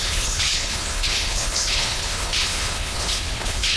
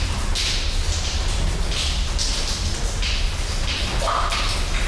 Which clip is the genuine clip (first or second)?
second